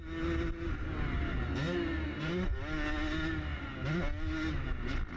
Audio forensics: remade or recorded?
recorded